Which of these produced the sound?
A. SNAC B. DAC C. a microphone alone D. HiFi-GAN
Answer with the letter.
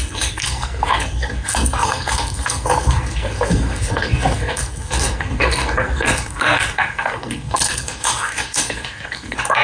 A